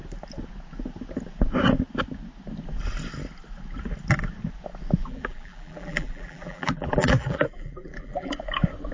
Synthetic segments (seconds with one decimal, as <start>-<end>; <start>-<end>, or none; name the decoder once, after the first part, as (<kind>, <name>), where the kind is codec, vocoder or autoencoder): 5.0-8.3 (vocoder, BigVGAN v2)